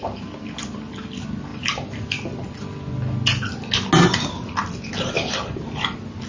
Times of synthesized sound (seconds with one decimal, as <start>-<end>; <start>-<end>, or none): none